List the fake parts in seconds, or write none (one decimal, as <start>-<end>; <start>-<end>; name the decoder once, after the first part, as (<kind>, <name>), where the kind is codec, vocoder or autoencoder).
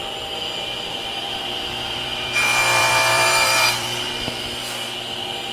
0.9-4.1 (vocoder, BigVGAN v2)